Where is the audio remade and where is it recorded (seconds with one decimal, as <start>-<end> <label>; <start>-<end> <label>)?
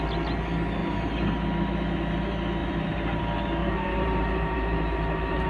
0.0-0.8 recorded; 0.8-1.3 remade; 1.3-2.6 recorded; 2.6-3.2 remade; 3.2-3.6 recorded; 3.6-5.5 remade